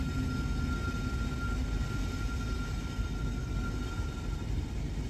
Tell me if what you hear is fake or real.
real